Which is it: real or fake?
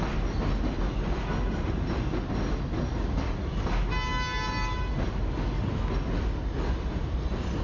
real